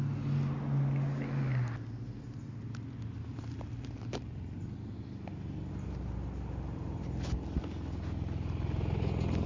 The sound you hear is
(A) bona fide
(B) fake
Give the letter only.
A